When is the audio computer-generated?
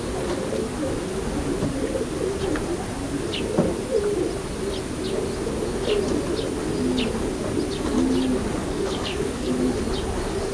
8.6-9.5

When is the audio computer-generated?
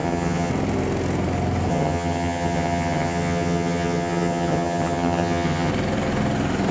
0.0-0.5; 1.7-5.7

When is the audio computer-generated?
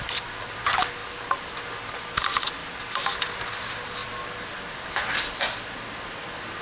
none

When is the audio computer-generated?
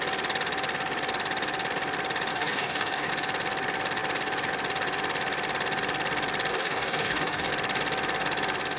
2.3-3.1; 6.5-7.5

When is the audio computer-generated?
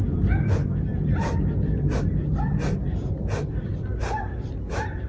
none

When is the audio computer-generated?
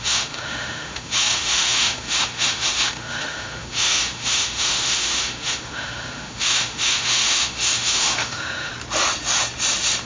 0.0-8.7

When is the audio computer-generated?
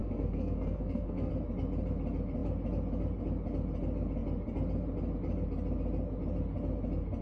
0.0-1.3